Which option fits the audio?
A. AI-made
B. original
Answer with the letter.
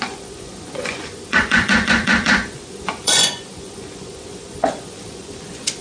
A